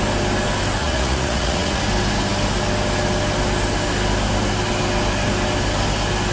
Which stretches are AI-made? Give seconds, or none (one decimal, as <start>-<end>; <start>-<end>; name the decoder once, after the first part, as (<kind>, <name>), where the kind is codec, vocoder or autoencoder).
0.8-1.8 (vocoder, Vocos)